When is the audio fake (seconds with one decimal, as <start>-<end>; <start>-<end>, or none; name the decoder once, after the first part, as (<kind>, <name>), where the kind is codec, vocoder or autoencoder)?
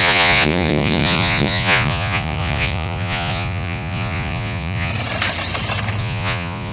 0.0-4.9 (vocoder, Vocos); 6.0-6.7